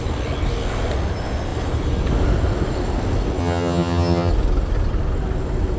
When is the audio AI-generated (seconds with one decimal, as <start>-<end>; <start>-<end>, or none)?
3.4-4.3